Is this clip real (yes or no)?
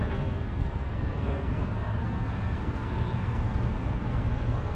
no